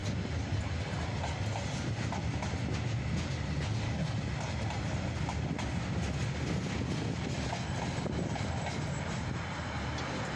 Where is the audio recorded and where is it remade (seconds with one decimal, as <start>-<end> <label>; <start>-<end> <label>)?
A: 0.0-10.4 recorded